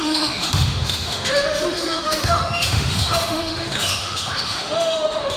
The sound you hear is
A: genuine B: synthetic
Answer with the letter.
B